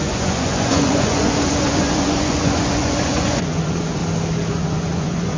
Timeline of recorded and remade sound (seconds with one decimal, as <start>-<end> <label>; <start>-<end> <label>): 0.0-4.0 remade; 4.0-4.5 recorded; 4.5-5.4 remade

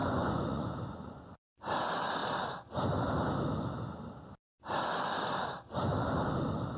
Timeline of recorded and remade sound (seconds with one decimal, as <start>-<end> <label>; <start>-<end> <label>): 0.0-1.4 remade; 1.4-6.8 recorded

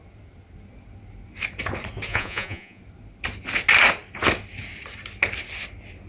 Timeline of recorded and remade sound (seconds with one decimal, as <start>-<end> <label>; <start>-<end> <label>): 0.0-2.1 recorded; 2.1-2.8 remade; 2.8-6.1 recorded

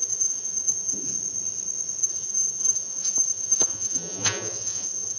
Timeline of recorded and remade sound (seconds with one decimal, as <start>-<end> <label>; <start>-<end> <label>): 0.0-1.1 remade; 1.1-2.0 recorded; 2.0-5.2 remade

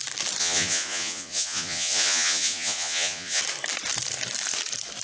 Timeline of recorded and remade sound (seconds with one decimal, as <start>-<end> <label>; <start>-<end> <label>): 0.0-0.4 recorded; 0.4-3.4 remade; 3.4-5.0 recorded

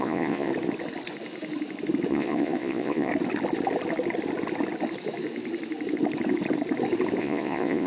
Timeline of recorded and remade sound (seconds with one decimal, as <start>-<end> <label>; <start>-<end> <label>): 0.0-0.5 remade; 0.5-2.1 recorded; 2.1-3.1 remade; 3.1-7.2 recorded; 7.2-7.9 remade

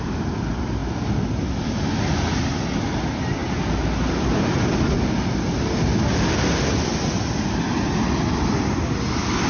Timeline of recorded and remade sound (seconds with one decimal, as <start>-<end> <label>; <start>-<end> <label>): 0.0-9.5 recorded

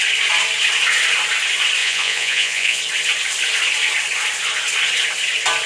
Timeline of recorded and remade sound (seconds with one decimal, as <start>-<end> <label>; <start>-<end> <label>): 0.0-1.8 recorded; 1.8-2.8 remade; 2.8-5.7 recorded